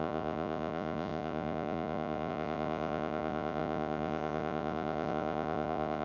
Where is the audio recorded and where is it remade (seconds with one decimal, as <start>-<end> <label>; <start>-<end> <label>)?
0.0-6.0 remade